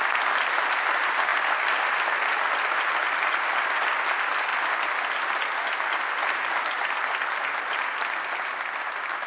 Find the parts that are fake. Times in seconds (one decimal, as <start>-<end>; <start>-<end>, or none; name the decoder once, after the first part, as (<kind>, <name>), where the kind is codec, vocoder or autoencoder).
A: none